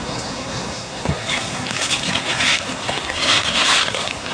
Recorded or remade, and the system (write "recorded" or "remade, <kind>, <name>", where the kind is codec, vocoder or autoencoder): remade, codec, SNAC